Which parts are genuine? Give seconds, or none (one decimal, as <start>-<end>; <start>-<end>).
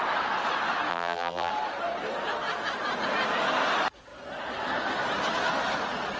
0.0-0.9; 1.5-6.2